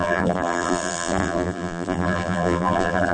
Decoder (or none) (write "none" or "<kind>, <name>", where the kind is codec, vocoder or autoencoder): vocoder, BigVGAN v2